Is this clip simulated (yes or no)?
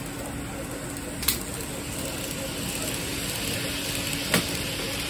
no